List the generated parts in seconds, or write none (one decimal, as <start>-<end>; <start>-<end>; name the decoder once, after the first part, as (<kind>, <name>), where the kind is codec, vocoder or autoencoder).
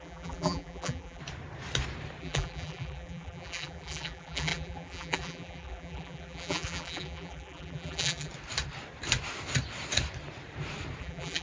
0.0-1.2 (vocoder, BigVGAN v2); 2.2-8.3; 11.0-11.4